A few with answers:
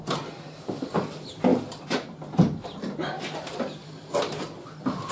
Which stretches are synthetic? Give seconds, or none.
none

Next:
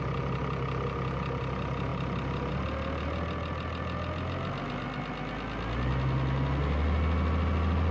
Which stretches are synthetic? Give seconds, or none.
none

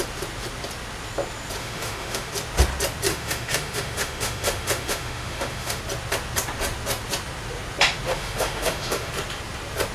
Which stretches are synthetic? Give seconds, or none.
1.6-2.3 (autoencoder, DAC-VAE); 3.1-5.8; 8.1-9.1

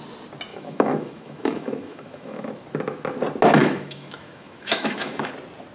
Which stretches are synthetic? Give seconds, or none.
0.5-2.5 (autoencoder, DAC-VAE); 3.6-5.3

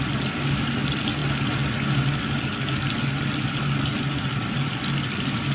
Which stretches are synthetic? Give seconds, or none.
none

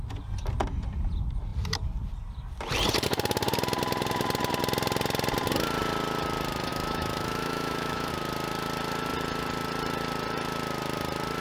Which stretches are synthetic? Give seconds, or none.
6.7-8.1 (autoencoder, DAC-VAE)

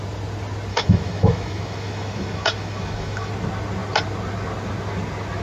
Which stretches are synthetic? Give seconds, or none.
0.7-3.3 (autoencoder, DAC-VAE)